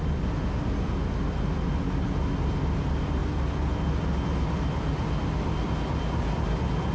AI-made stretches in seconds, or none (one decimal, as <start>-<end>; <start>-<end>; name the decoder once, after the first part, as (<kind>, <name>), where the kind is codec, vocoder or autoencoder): none